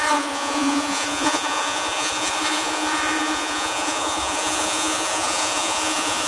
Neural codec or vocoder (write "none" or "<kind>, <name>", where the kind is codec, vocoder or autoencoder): vocoder, Vocos